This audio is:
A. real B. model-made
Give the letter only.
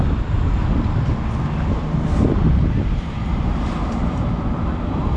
A